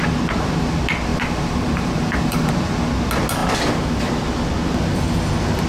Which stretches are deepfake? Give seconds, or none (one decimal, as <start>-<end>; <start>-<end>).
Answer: 1.1-2.5